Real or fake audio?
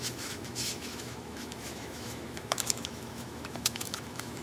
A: fake